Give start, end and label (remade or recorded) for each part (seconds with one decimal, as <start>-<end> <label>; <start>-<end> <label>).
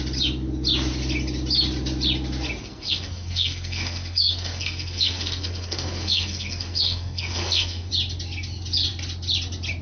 0.0-2.6 recorded; 2.6-7.9 remade; 7.9-9.8 recorded